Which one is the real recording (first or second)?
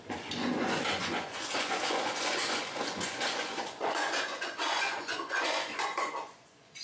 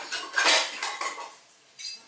second